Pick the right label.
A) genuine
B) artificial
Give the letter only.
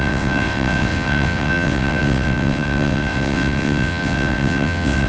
B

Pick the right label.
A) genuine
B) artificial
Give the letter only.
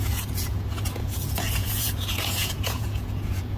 B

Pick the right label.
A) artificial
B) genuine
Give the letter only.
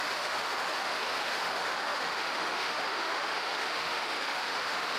A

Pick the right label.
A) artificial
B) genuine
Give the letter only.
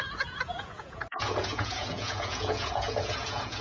A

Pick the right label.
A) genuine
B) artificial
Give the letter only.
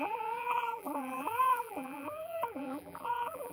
B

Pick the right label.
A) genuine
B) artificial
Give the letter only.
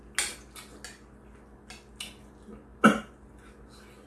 A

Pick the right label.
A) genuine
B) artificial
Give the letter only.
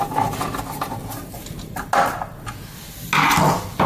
A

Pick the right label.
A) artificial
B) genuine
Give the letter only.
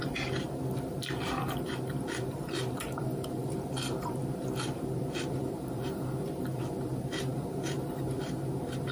A